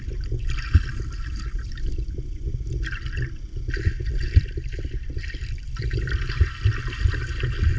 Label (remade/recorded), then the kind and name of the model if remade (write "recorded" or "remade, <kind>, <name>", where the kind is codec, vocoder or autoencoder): recorded